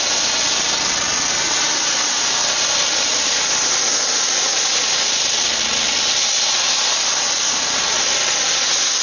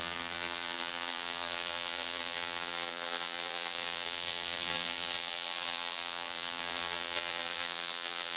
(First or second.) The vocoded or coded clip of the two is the second